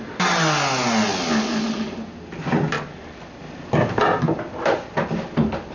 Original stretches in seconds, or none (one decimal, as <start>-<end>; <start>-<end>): 0.0-5.7